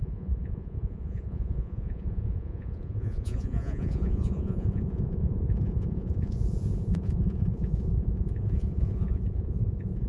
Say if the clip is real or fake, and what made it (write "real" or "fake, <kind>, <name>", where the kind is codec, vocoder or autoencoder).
fake, vocoder, Vocos